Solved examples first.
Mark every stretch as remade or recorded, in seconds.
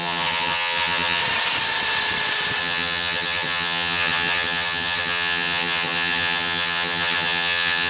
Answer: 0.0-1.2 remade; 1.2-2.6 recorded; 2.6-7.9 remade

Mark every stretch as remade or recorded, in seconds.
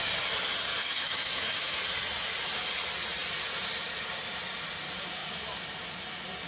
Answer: 0.0-0.8 recorded; 0.8-1.8 remade; 1.8-6.5 recorded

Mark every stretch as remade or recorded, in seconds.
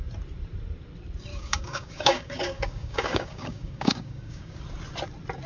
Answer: 0.0-1.3 recorded; 1.3-4.6 remade; 4.6-5.5 recorded